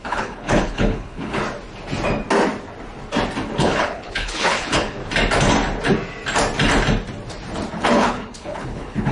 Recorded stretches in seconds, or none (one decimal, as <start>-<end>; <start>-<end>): 1.4-3.6; 5.0-7.7